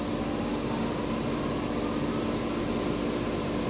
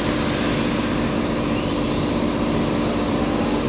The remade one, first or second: second